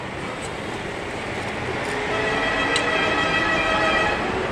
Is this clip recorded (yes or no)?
yes